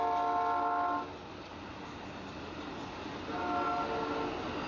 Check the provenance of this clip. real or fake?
real